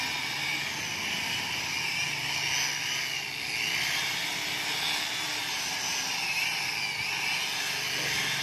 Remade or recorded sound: recorded